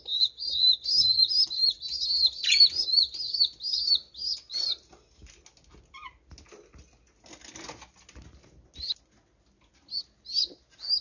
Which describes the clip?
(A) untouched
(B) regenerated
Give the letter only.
A